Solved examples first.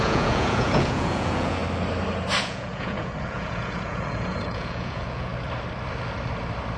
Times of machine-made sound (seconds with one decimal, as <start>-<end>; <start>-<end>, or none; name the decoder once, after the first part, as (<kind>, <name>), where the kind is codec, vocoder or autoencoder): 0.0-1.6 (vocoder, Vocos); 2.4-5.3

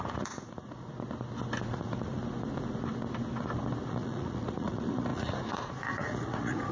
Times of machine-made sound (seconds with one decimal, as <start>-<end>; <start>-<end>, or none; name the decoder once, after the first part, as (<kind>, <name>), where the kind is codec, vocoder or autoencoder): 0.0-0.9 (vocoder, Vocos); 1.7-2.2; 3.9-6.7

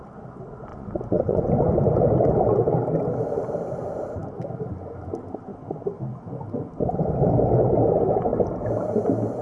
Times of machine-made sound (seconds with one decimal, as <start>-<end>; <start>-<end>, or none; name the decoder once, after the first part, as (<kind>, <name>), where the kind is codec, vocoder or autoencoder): 0.7-1.5 (vocoder, Vocos)

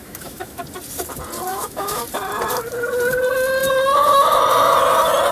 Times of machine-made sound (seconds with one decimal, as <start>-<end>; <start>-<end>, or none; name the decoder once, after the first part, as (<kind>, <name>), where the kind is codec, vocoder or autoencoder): 0.0-0.6 (autoencoder, DAC-VAE); 1.5-2.0

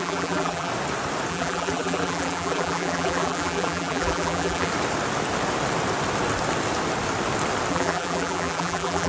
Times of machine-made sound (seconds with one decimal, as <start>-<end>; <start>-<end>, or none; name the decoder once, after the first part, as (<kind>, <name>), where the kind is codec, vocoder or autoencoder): 0.0-0.7 (vocoder, BigVGAN v2); 1.3-4.7; 7.7-9.1

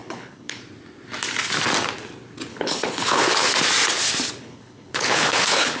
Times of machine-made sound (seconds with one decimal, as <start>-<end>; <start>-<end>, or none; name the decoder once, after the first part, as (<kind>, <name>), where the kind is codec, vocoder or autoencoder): 0.0-0.6 (codec, HILCodec); 2.5-3.5; 4.4-5.8

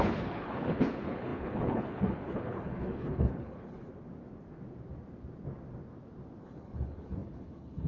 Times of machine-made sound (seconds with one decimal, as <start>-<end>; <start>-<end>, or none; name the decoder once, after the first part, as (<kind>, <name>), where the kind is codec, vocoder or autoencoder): 0.0-3.9 (codec, HILCodec); 6.4-7.9

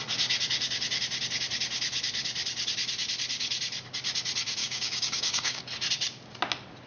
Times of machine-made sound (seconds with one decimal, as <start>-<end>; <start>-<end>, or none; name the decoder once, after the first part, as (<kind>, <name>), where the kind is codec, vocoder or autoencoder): 4.6-5.6 (codec, DAC)